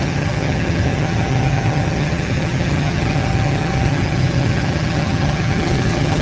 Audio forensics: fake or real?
fake